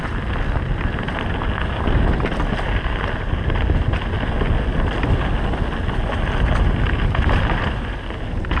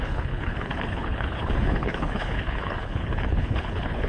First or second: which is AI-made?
second